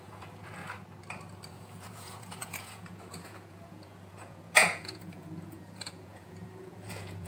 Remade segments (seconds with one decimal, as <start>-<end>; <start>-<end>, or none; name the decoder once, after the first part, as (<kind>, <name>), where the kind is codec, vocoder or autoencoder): 0.0-0.6 (vocoder, Vocos); 1.5-7.3